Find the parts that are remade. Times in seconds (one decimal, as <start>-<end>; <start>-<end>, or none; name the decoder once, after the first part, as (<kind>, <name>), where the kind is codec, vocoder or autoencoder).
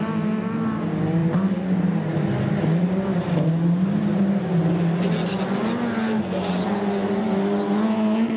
none